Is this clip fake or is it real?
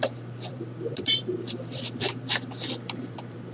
fake